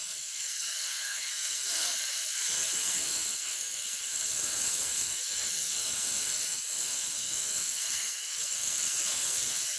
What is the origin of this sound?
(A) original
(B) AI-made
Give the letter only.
B